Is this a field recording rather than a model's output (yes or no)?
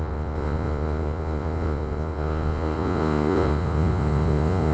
no